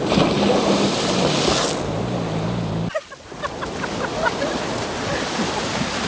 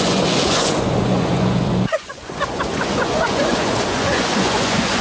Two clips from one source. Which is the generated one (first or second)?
second